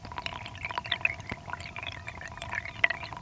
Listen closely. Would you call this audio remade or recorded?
recorded